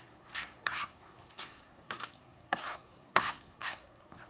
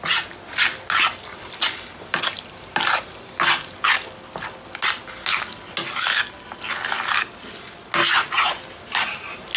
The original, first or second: second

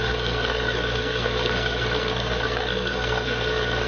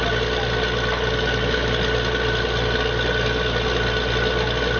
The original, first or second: second